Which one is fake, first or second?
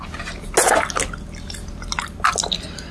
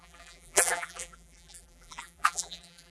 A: second